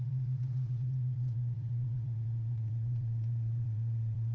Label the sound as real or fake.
fake